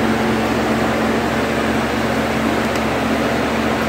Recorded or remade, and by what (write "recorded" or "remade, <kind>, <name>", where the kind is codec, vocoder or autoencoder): recorded